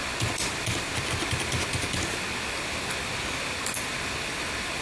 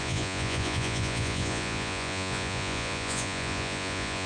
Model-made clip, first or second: second